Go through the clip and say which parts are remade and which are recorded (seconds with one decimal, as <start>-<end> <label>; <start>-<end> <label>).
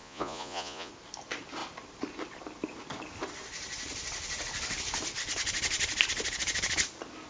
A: 0.0-0.9 remade; 0.9-7.3 recorded